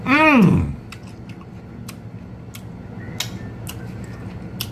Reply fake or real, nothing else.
real